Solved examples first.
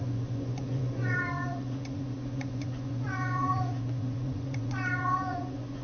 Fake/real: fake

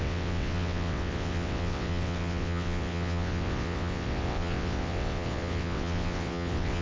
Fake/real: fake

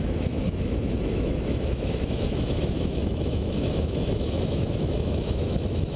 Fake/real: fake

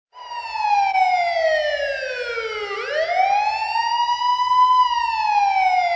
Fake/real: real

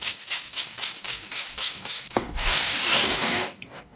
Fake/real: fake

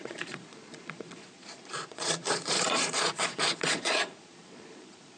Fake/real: fake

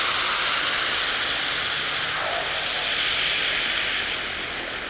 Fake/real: real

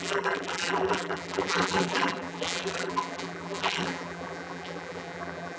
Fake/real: fake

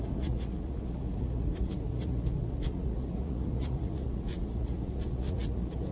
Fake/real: fake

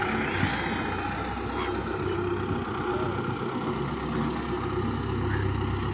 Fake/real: real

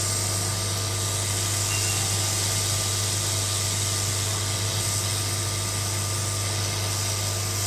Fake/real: real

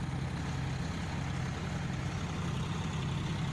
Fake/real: real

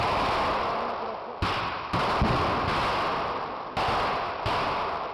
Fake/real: real